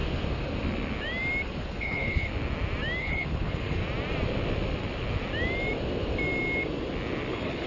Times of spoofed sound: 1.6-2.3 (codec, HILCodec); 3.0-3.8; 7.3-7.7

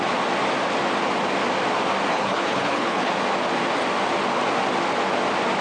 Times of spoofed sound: 2.1-3.1 (codec, HILCodec)

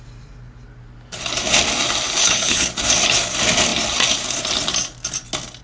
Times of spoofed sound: 2.2-2.7 (codec, HILCodec)

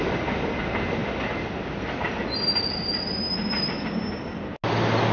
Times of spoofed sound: none